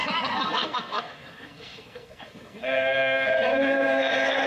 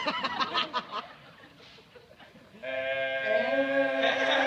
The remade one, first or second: first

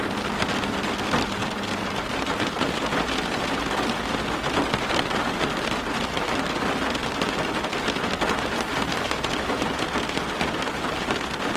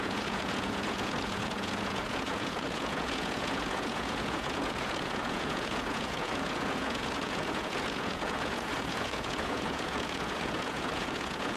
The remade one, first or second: second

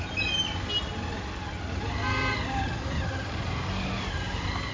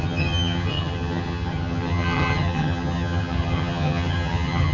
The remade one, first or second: second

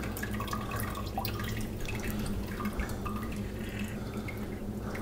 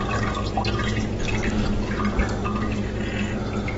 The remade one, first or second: first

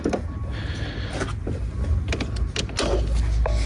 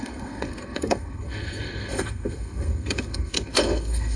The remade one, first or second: second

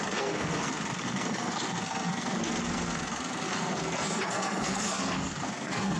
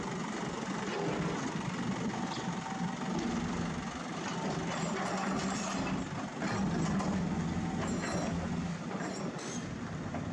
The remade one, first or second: first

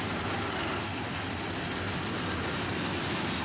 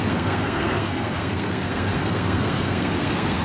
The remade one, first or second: second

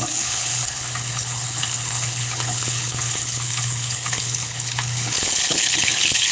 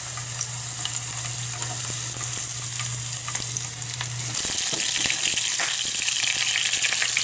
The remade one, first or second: first